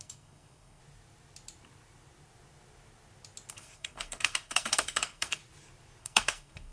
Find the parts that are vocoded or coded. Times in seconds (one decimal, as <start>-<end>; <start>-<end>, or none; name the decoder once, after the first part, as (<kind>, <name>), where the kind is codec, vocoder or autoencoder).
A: 0.0-0.8 (codec, SNAC); 3.5-5.4; 6.0-6.7